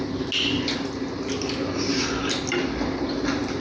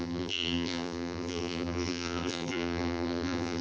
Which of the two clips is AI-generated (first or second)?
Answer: second